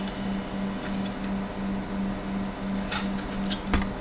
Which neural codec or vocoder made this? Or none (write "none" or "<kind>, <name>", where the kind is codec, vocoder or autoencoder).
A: none